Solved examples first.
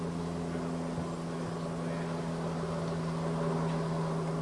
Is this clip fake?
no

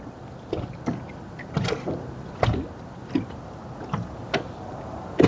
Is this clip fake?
no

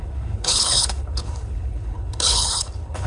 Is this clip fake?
yes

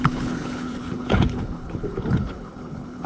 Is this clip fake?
yes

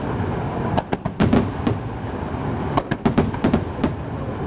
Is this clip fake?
no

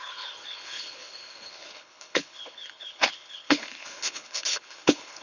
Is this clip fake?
yes